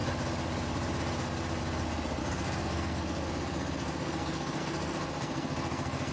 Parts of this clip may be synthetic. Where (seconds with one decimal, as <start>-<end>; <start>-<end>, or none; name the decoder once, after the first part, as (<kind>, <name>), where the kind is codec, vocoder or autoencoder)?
2.2-6.1 (codec, SNAC)